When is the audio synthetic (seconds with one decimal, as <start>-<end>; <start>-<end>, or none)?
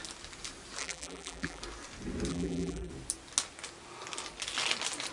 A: 0.8-1.6; 2.3-2.9